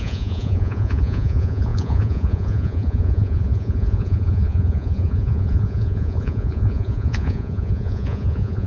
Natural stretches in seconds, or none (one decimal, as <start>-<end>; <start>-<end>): none